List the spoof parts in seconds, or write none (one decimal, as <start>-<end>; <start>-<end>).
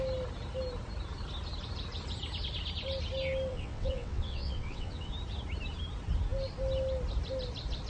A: 3.5-5.1